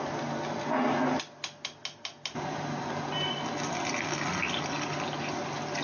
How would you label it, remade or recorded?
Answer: recorded